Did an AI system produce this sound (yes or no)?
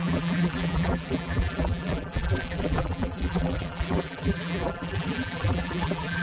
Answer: yes